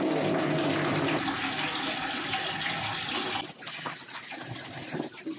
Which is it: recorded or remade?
recorded